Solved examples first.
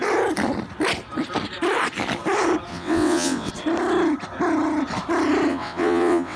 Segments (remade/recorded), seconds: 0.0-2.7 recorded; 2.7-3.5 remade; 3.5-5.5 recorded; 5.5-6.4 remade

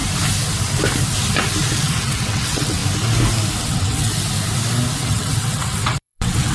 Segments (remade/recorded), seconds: 0.0-1.7 recorded; 1.7-2.8 remade; 2.8-3.6 recorded; 3.6-4.1 remade; 4.1-5.0 recorded; 5.0-6.5 remade